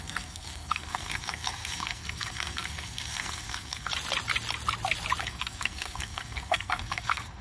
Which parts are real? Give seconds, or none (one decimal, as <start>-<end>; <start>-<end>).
3.9-5.2